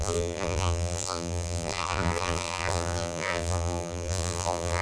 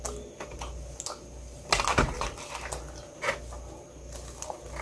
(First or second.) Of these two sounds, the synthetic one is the first